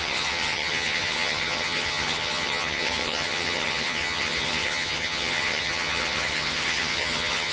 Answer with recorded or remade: remade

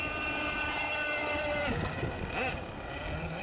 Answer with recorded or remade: recorded